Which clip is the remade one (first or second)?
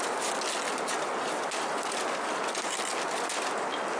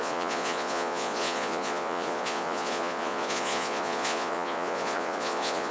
second